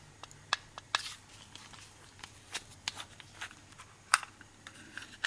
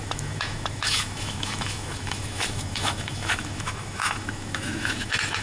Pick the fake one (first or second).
second